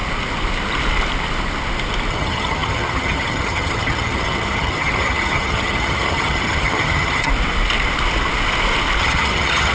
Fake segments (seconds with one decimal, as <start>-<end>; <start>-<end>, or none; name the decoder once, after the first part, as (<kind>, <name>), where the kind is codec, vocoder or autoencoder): 2.1-7.3 (vocoder, HiFi-GAN); 9.0-9.7

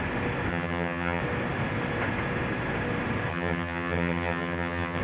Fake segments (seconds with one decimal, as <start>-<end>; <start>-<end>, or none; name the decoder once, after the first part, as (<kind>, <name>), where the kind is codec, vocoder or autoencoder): 0.5-1.2 (vocoder, HiFi-GAN); 3.3-5.0

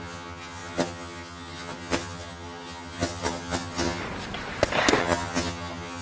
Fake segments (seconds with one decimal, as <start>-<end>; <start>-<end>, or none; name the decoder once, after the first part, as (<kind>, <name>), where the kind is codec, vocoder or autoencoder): 0.0-4.0 (vocoder, HiFi-GAN); 5.0-6.0